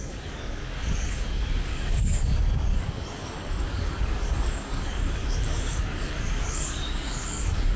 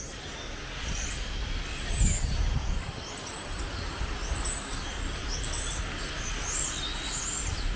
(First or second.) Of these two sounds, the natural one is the second